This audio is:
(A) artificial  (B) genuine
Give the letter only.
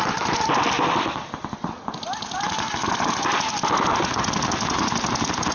B